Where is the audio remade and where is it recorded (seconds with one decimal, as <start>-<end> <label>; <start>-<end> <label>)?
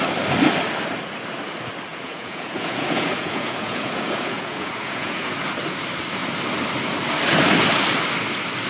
0.0-1.9 recorded; 1.9-5.3 remade; 5.3-8.7 recorded